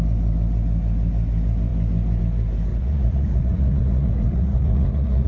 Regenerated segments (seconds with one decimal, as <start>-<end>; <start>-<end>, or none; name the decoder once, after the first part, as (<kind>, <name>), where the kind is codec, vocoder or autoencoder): 2.7-5.3 (vocoder, Vocos)

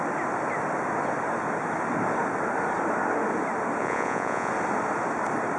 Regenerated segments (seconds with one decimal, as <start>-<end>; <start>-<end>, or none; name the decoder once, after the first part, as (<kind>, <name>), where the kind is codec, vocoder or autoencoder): 3.8-4.5 (vocoder, Vocos)

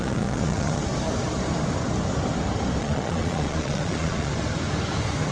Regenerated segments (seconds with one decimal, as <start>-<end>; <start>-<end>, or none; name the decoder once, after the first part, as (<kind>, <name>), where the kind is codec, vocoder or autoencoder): 0.0-0.8 (vocoder, Vocos); 2.8-4.3

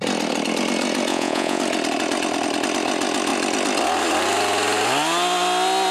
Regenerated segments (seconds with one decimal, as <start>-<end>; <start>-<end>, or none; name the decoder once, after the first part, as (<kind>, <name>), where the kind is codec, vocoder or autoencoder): 1.1-1.6 (vocoder, Vocos)

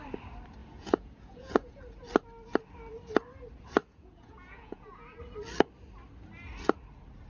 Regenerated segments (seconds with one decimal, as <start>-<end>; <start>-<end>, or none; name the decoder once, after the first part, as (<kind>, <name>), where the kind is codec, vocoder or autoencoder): 0.6-1.8 (vocoder, Vocos); 3.8-5.2

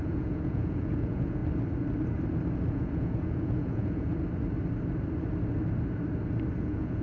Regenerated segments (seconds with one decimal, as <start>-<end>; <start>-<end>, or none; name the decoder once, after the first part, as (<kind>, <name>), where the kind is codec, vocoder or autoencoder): 0.0-1.4 (vocoder, Vocos); 2.7-4.1; 6.6-7.0